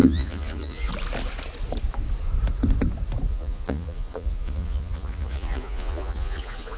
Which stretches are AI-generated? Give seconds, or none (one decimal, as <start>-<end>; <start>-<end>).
0.0-0.9; 3.3-6.8

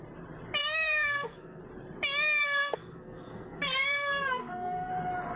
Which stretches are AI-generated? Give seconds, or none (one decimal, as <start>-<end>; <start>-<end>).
0.6-1.6; 2.4-4.9